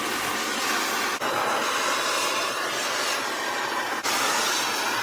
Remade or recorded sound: recorded